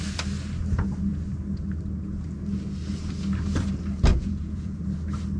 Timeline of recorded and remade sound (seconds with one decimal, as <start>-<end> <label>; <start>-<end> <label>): 0.0-4.1 recorded; 4.1-4.8 remade; 4.8-5.4 recorded